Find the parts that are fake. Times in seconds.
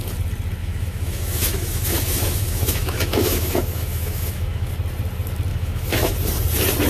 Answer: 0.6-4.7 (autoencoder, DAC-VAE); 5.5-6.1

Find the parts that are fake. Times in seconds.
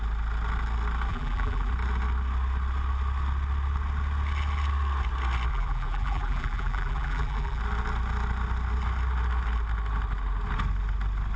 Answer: 1.1-1.7 (vocoder, BigVGAN v2); 5.5-7.6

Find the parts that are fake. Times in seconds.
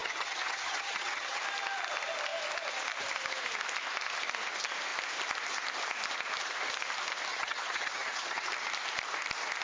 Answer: 0.0-1.4 (vocoder, HiFi-GAN); 7.3-8.5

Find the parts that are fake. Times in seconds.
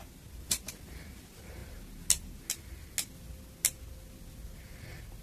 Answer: none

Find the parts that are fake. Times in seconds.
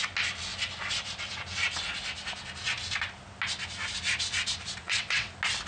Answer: 4.8-5.3 (vocoder, WaveNeXt)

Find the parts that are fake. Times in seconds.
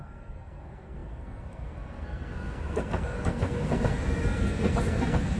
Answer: 0.0-5.4 (codec, SNAC)